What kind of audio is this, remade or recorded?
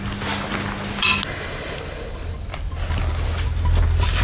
recorded